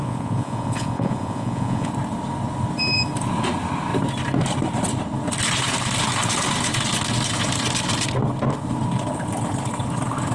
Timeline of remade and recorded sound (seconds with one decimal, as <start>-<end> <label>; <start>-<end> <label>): 0.0-1.9 remade; 1.9-10.3 recorded